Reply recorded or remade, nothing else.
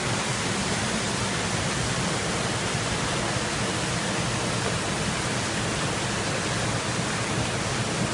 recorded